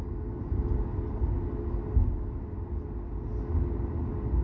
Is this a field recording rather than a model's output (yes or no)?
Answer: yes